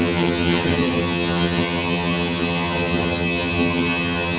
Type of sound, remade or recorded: remade